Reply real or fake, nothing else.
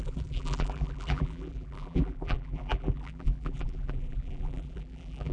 fake